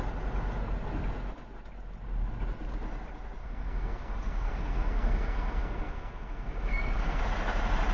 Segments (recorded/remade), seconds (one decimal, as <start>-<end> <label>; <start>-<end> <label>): 0.0-3.4 recorded; 3.4-7.2 remade; 7.2-7.9 recorded